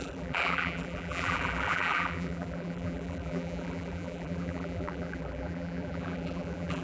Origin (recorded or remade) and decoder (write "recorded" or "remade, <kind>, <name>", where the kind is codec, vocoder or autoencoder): remade, vocoder, BigVGAN v2